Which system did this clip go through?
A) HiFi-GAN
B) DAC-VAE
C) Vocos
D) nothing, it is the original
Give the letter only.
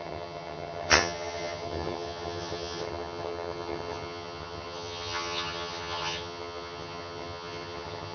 A